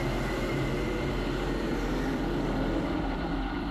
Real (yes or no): yes